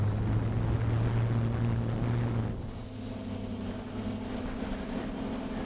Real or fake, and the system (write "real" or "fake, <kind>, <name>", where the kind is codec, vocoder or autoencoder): real